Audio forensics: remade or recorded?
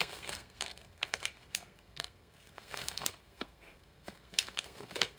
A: remade